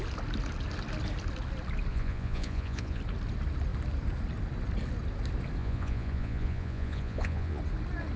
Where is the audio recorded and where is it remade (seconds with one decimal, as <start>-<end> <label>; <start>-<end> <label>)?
0.0-1.9 recorded; 1.9-3.0 remade; 3.0-5.6 recorded; 5.6-7.6 remade; 7.6-8.2 recorded